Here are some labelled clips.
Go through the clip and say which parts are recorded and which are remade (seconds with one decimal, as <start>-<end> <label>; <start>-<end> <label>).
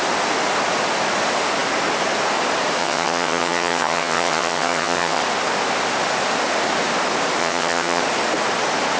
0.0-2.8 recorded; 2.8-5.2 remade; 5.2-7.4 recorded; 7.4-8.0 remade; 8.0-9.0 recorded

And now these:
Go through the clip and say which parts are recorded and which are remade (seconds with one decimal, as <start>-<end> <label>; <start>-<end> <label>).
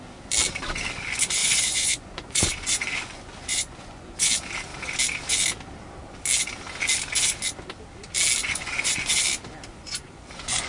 0.0-1.4 recorded; 1.4-4.3 remade; 4.3-8.4 recorded; 8.4-9.1 remade; 9.1-9.7 recorded; 9.7-10.7 remade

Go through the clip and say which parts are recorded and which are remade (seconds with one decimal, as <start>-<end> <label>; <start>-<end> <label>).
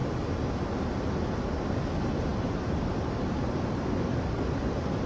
0.0-5.1 recorded